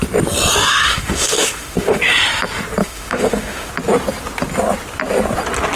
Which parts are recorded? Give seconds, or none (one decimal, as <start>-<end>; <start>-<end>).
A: 0.0-0.6; 2.0-2.8; 3.7-5.8